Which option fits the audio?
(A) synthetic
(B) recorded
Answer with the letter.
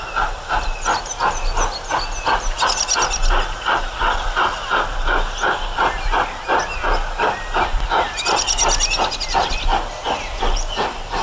B